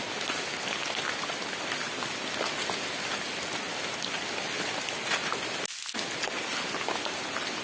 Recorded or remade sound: recorded